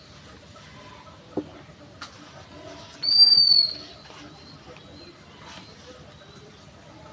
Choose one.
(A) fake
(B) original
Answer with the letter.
B